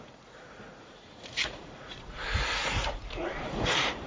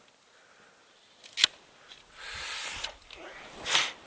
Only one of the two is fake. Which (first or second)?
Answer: first